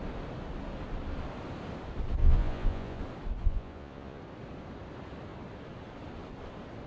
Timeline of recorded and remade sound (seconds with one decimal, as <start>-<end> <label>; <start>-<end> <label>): 0.0-2.2 recorded; 2.2-3.0 remade; 3.0-3.4 recorded; 3.4-4.2 remade; 4.2-6.9 recorded